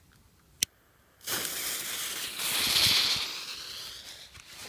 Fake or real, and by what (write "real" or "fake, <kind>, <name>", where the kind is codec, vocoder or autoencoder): fake, vocoder, BigVGAN v2